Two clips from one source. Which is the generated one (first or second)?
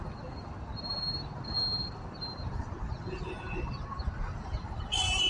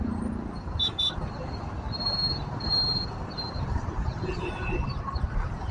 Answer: second